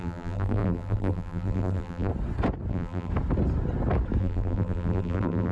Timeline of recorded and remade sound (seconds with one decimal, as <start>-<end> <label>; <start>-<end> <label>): 0.0-2.1 remade; 2.1-2.7 recorded; 2.7-3.1 remade; 3.1-4.2 recorded; 4.2-5.5 remade